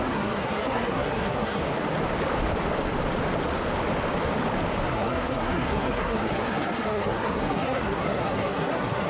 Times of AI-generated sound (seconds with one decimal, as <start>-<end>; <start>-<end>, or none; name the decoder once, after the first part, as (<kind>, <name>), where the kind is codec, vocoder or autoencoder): 0.0-1.6 (codec, SNAC); 4.9-9.1